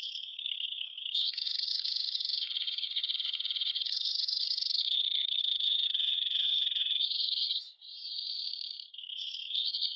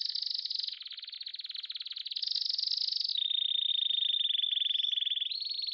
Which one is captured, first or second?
second